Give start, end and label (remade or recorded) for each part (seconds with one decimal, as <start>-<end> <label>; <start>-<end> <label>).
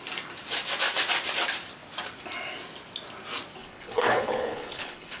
0.0-3.6 recorded; 3.6-5.2 remade